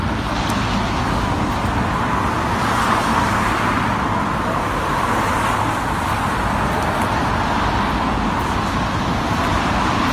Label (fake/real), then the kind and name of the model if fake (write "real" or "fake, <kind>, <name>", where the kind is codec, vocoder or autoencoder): real